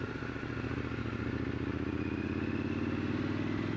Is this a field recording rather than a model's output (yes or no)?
yes